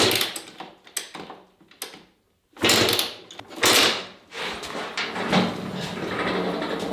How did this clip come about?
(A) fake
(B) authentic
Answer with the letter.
B